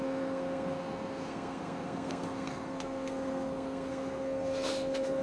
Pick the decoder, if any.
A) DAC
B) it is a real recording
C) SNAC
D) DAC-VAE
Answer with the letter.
C